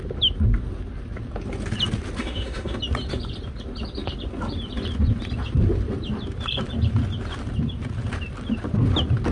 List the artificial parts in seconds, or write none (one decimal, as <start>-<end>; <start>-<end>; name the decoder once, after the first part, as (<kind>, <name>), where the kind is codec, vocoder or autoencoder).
2.2-2.8 (autoencoder, DAC-VAE)